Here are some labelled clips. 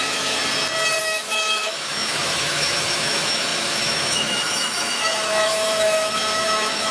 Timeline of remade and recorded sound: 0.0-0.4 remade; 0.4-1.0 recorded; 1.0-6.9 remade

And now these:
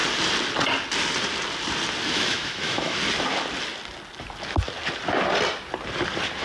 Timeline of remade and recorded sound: 0.0-2.1 recorded; 2.1-3.0 remade; 3.0-6.4 recorded